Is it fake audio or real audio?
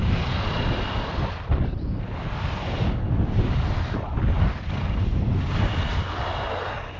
real